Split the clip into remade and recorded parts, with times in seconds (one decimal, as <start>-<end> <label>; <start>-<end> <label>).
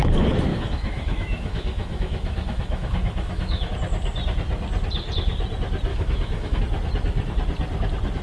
0.0-0.5 recorded; 0.5-3.7 remade; 3.7-5.9 recorded; 5.9-6.6 remade; 6.6-8.2 recorded